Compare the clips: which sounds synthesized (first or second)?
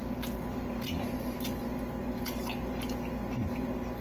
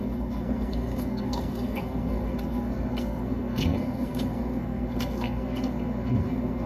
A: second